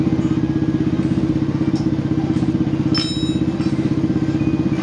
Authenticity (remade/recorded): recorded